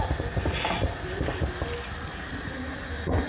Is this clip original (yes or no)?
yes